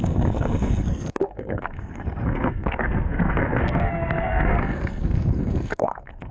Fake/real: fake